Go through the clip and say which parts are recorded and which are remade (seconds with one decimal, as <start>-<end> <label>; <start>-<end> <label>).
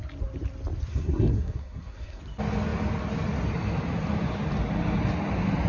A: 0.0-0.9 recorded; 0.9-2.2 remade; 2.2-5.7 recorded